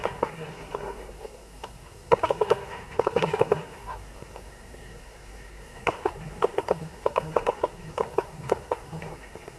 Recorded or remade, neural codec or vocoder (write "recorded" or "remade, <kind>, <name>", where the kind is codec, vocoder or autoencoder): remade, codec, SNAC